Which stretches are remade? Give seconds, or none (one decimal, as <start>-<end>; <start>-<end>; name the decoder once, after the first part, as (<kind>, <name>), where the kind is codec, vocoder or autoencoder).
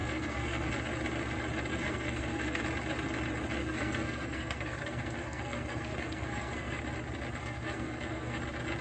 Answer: 0.0-0.7 (codec, SNAC); 1.7-2.6; 3.6-6.8; 7.4-8.4